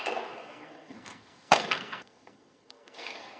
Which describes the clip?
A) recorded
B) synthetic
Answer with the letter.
B